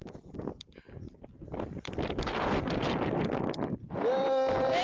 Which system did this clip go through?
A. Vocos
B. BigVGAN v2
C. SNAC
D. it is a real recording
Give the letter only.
B